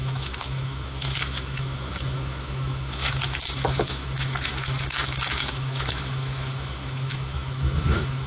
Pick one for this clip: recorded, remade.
remade